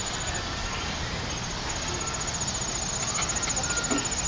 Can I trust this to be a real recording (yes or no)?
yes